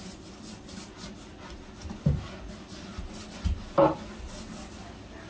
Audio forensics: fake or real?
real